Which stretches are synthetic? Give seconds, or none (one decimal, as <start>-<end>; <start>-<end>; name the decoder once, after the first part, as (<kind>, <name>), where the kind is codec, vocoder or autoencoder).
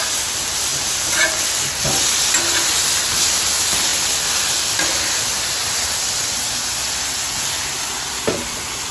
none